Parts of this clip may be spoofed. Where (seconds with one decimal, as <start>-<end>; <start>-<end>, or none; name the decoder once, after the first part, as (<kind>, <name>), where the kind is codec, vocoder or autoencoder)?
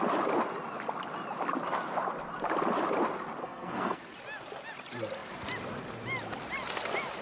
3.4-4.0 (codec, SNAC)